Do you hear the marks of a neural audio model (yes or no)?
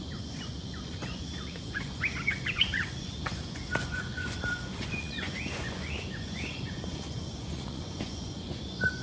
yes